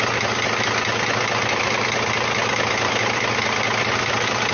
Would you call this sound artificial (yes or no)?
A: no